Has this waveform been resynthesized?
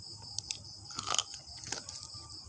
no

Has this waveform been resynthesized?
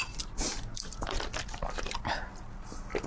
no